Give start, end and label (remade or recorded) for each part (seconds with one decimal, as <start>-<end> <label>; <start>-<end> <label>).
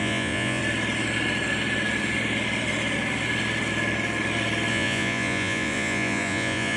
0.0-0.6 remade; 0.6-4.7 recorded; 4.7-6.8 remade